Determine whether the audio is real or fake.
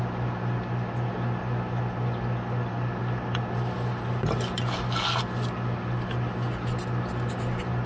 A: real